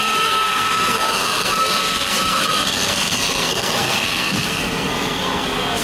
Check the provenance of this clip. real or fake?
fake